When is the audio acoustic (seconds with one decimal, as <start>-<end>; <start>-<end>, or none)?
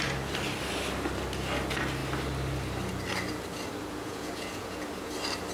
0.0-3.8; 5.1-5.5